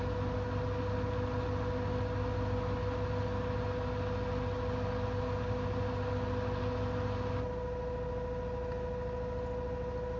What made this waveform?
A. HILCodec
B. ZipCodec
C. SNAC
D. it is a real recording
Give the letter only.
D